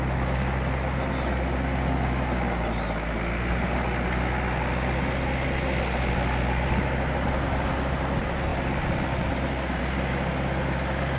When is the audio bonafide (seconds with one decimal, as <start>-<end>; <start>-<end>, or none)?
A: 0.0-11.2